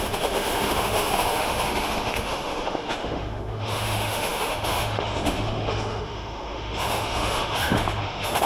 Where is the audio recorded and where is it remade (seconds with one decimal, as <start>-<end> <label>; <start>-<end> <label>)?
0.0-8.5 remade

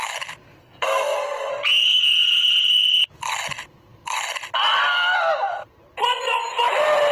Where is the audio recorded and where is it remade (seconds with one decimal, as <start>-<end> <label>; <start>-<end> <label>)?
0.0-0.6 recorded; 0.6-1.5 remade; 1.5-7.1 recorded

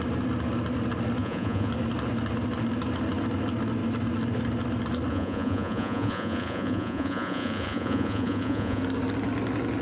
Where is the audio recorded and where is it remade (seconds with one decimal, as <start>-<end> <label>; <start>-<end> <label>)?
0.0-1.2 recorded; 1.2-1.7 remade; 1.7-5.1 recorded; 5.1-8.8 remade; 8.8-9.8 recorded

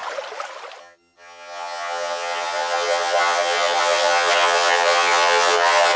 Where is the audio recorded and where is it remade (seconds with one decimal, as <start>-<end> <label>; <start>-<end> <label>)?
0.0-0.8 recorded; 0.8-6.0 remade